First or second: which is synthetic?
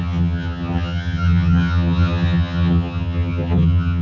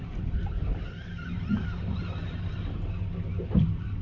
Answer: first